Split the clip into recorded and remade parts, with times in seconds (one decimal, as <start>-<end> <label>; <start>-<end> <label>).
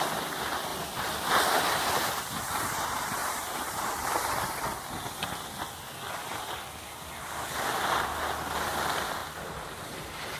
0.0-0.7 recorded; 0.7-1.3 remade; 1.3-3.2 recorded; 3.2-4.4 remade; 4.4-9.2 recorded; 9.2-10.4 remade